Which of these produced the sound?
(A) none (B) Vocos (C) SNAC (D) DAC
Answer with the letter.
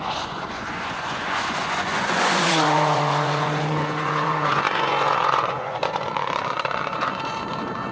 B